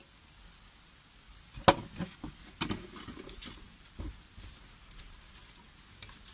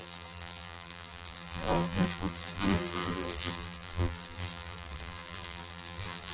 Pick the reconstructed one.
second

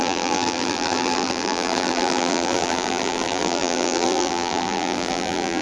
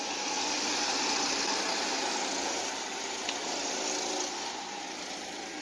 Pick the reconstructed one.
first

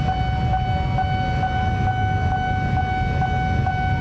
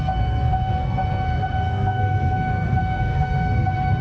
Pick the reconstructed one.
second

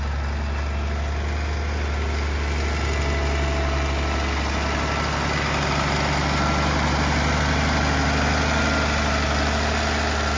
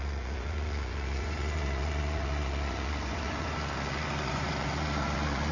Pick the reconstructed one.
second